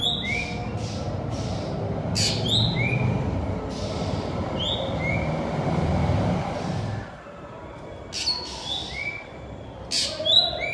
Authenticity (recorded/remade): recorded